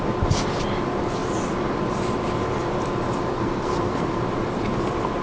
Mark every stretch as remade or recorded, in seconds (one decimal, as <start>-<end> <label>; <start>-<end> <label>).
0.0-3.3 recorded; 3.3-4.2 remade; 4.2-5.2 recorded